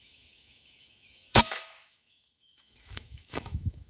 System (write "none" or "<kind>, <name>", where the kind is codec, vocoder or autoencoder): autoencoder, DAC-VAE